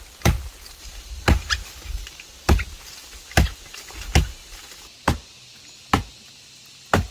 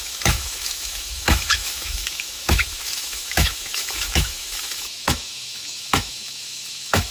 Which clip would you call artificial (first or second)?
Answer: second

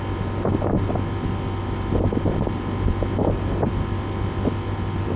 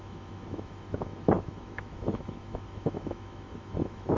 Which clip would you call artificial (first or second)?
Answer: second